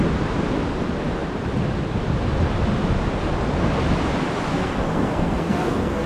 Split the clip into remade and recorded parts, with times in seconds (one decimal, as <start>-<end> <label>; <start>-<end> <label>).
0.0-4.5 recorded; 4.5-6.1 remade